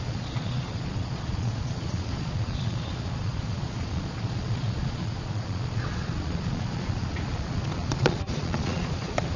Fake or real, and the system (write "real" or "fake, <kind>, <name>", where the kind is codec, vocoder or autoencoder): fake, vocoder, Vocos